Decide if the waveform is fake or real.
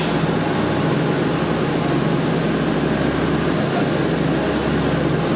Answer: real